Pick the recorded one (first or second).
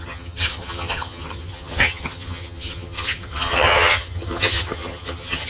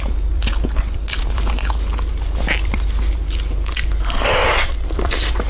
second